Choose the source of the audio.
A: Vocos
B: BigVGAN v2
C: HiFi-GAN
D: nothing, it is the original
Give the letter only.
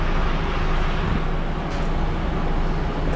D